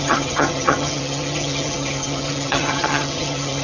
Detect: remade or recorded remade